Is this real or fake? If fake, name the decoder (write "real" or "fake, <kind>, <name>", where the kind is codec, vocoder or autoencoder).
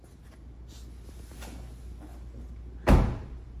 real